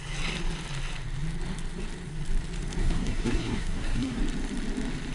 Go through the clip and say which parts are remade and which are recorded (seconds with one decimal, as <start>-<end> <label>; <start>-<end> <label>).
0.0-2.8 recorded; 2.8-4.2 remade; 4.2-5.1 recorded